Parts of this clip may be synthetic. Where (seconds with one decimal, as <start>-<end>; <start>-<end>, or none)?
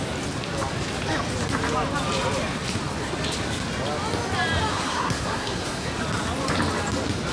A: 4.7-5.9